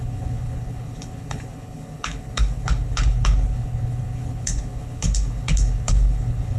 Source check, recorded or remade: remade